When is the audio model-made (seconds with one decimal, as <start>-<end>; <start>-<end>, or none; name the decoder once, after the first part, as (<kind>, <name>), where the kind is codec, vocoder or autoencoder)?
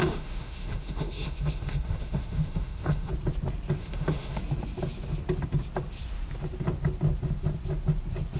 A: 0.0-3.1 (autoencoder, DAC-VAE); 3.8-4.4